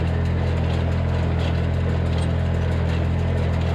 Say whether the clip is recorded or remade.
recorded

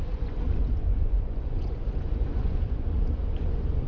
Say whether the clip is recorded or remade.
remade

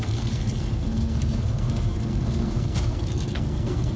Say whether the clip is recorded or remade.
remade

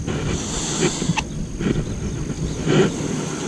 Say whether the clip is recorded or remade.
recorded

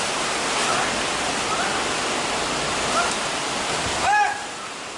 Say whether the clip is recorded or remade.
recorded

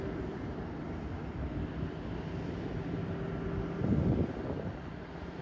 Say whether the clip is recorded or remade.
recorded